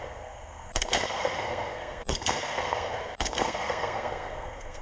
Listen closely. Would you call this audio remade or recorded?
remade